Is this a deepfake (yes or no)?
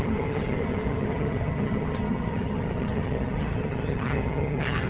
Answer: yes